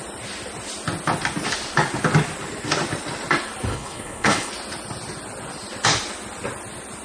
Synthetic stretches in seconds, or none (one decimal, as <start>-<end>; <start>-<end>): 3.7-4.5